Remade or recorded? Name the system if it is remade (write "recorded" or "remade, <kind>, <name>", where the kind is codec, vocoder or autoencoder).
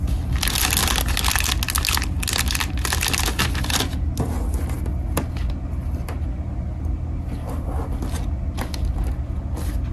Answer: recorded